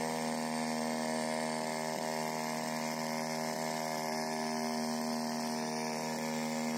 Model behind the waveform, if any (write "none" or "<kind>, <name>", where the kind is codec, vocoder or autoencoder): none